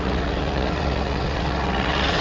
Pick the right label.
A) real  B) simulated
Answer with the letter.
B